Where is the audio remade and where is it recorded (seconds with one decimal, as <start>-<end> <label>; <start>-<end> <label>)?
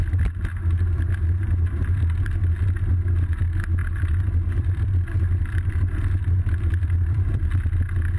0.0-3.8 recorded; 3.8-7.6 remade; 7.6-8.2 recorded